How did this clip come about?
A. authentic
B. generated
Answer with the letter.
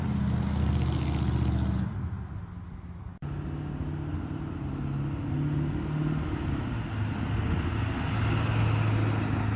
A